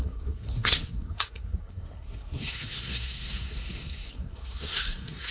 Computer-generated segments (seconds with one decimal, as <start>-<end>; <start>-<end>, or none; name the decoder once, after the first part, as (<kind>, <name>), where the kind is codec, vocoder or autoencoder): 0.0-5.3 (codec, SNAC)